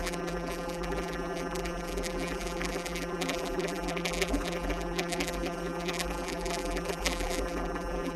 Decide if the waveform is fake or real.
fake